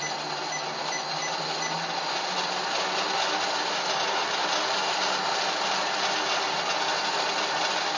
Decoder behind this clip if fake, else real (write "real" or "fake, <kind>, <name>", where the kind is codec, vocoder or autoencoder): real